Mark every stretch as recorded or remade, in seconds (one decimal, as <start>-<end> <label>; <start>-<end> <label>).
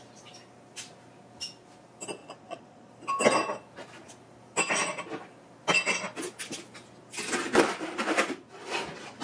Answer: 0.0-2.2 recorded; 2.2-2.9 remade; 2.9-9.2 recorded